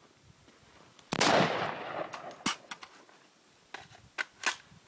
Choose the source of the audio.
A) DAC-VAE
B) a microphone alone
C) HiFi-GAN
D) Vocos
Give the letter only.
B